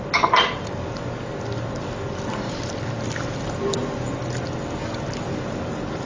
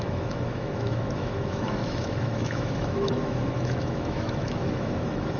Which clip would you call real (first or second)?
first